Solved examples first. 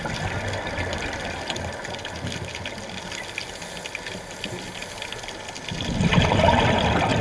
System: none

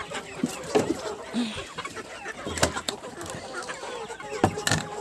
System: none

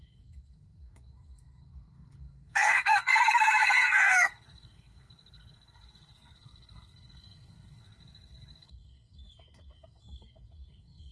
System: codec, SNAC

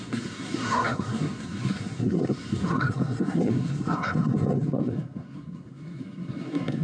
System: codec, SNAC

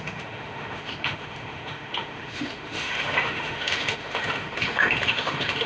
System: autoencoder, DAC-VAE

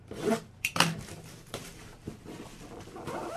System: vocoder, BigVGAN v2